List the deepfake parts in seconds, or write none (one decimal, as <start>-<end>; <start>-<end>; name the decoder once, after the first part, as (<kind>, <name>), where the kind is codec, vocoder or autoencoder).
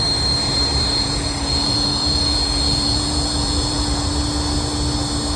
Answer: 0.9-4.1 (vocoder, Vocos)